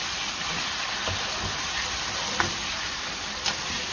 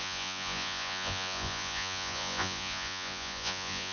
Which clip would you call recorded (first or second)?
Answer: first